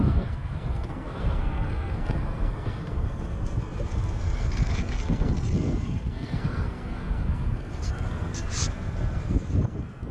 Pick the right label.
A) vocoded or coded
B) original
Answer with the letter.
A